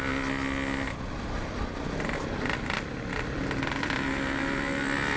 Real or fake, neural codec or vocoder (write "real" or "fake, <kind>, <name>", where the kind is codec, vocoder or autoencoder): real